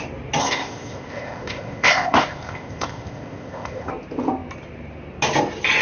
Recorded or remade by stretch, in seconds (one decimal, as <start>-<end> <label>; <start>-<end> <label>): 0.0-0.4 recorded; 0.4-3.9 remade; 3.9-5.8 recorded